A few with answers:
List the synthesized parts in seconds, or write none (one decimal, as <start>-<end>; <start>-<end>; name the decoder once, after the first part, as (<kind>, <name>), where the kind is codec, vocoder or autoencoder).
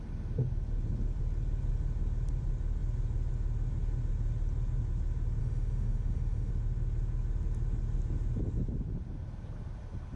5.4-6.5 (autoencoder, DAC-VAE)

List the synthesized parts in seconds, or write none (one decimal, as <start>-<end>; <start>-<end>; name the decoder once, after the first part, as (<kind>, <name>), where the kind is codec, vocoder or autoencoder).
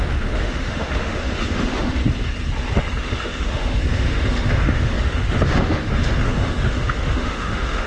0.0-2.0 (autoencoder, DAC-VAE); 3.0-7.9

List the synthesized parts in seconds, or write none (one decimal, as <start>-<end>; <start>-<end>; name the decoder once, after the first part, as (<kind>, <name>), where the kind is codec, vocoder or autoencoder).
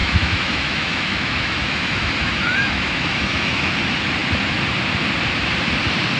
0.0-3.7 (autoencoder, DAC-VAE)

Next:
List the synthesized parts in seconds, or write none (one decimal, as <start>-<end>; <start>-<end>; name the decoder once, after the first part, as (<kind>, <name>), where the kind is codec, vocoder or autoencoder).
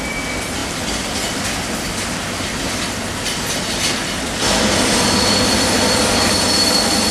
none